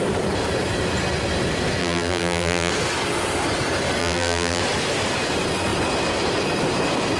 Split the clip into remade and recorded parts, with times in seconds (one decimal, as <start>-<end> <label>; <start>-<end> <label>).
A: 0.0-1.8 recorded; 1.8-2.7 remade; 2.7-4.0 recorded; 4.0-4.6 remade; 4.6-7.2 recorded